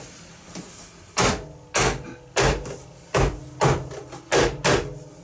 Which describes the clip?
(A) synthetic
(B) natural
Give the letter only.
B